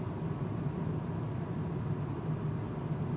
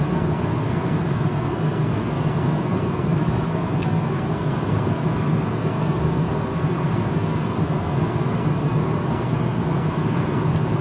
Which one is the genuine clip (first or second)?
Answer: first